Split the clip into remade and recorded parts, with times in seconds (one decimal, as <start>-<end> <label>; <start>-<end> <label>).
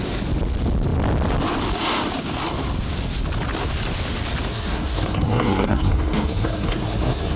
0.0-4.5 recorded; 4.5-7.4 remade